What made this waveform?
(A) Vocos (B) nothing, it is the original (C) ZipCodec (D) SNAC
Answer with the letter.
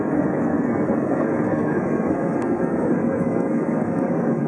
D